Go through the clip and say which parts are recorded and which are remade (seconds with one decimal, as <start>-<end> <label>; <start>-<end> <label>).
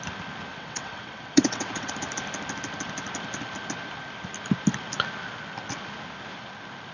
0.0-0.5 recorded; 0.5-1.9 remade; 1.9-6.9 recorded